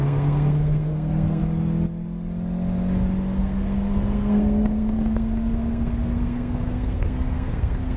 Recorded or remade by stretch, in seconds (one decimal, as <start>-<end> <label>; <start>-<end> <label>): 0.0-1.4 remade; 1.4-3.4 recorded; 3.4-8.0 remade